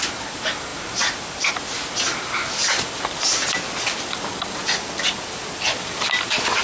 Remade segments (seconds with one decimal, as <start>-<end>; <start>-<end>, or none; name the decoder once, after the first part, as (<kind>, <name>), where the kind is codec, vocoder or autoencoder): none